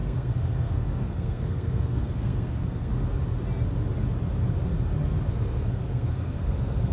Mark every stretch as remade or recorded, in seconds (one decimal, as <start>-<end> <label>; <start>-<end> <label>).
0.0-2.9 remade; 2.9-5.3 recorded; 5.3-6.9 remade